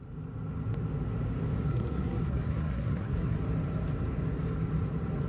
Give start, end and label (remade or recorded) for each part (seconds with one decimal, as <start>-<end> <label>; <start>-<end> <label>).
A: 0.0-1.7 recorded; 1.7-3.4 remade; 3.4-5.3 recorded